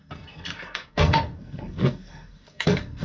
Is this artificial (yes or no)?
yes